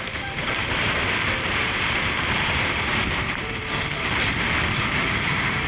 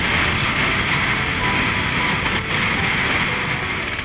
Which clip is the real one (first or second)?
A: second